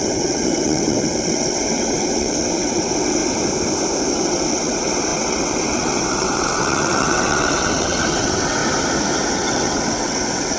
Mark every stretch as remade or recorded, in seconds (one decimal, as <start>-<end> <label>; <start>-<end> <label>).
0.0-3.2 remade; 3.2-4.1 recorded; 4.1-8.6 remade; 8.6-9.3 recorded; 9.3-10.6 remade